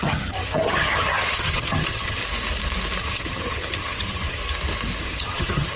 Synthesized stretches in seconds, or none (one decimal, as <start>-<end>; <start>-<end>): 0.0-2.2; 3.0-4.4; 5.0-5.8